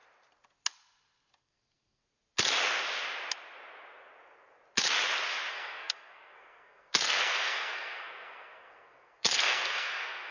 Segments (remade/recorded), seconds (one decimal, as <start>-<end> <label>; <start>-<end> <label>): 0.0-1.4 recorded; 1.4-2.0 remade; 2.0-5.5 recorded; 5.5-10.3 remade